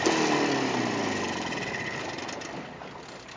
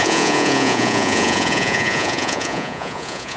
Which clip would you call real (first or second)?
first